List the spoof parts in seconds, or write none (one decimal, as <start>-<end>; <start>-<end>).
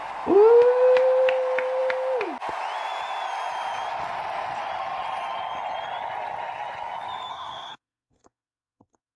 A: 7.3-9.2